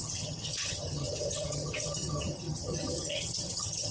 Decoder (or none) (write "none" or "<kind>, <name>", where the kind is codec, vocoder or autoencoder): vocoder, HiFi-GAN